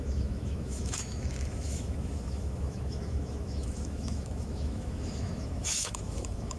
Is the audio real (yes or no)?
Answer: no